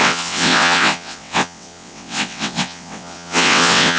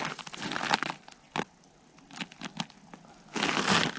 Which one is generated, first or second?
first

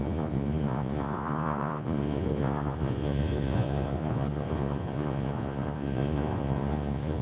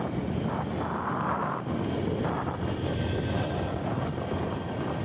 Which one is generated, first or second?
first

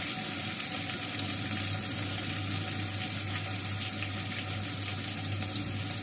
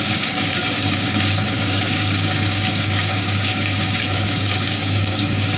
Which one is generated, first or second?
second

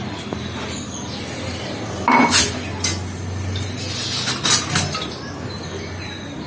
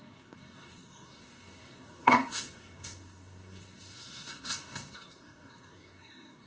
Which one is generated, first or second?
second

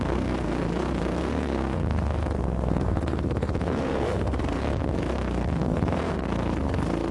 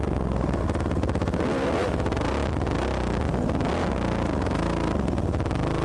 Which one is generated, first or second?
first